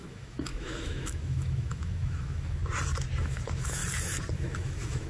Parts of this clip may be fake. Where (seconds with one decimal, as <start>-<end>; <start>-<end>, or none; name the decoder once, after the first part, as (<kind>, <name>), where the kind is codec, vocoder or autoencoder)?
0.0-2.6 (autoencoder, DAC-VAE); 3.2-3.8; 4.3-5.1